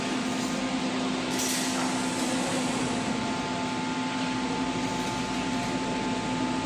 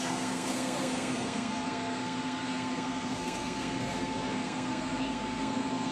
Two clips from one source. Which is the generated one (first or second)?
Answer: second